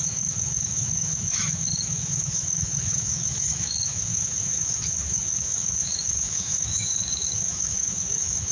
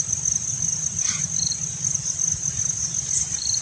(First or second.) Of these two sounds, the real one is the second